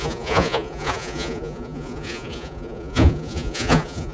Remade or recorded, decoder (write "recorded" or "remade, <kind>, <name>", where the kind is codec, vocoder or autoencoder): remade, vocoder, Vocos